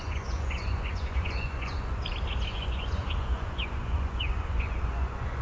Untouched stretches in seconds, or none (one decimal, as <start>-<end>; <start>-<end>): 2.0-2.5